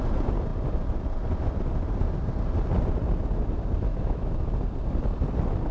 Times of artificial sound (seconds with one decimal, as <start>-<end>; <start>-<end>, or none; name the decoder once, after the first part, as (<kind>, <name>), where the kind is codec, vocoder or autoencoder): 3.9-4.4 (autoencoder, DAC-VAE)